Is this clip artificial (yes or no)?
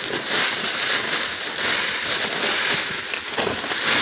no